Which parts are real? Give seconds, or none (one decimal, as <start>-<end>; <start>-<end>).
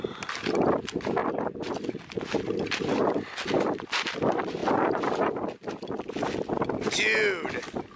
0.0-8.0